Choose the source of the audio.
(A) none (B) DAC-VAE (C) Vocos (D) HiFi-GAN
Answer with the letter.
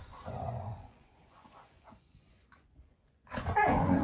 C